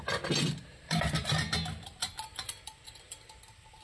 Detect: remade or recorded recorded